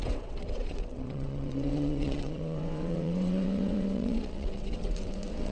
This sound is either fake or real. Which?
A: fake